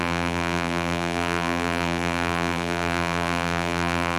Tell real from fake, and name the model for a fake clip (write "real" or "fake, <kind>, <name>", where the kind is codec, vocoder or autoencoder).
fake, vocoder, BigVGAN v2